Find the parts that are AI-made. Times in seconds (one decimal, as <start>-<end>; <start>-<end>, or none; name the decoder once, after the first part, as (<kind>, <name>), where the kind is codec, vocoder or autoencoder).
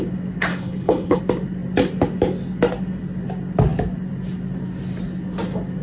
0.5-1.2 (codec, HILCodec)